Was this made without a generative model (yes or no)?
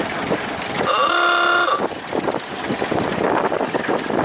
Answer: yes